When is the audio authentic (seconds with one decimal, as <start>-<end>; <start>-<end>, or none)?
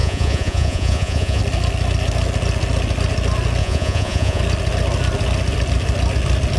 1.4-3.6; 4.4-6.6